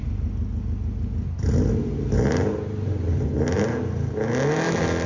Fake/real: real